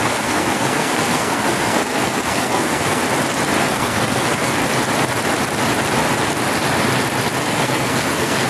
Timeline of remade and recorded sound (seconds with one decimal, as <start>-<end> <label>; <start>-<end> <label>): 0.0-3.0 remade; 3.0-3.6 recorded; 3.6-4.6 remade; 4.6-7.4 recorded; 7.4-8.5 remade